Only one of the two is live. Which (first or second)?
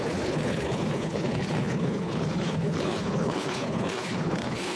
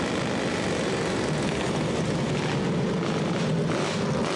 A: second